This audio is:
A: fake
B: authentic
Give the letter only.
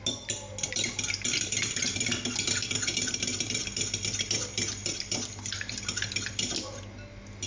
B